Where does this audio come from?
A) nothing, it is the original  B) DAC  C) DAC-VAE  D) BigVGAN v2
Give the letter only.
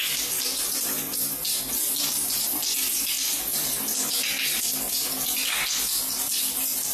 A